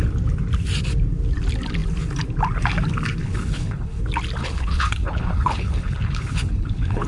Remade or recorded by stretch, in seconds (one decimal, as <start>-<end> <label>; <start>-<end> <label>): 0.0-3.2 recorded; 3.2-4.0 remade; 4.0-4.4 recorded; 4.4-7.1 remade